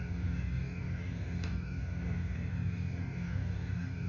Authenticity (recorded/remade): remade